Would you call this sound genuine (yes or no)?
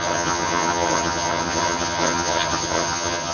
no